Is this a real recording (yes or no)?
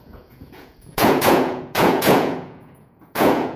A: no